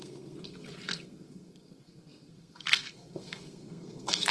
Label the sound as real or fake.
fake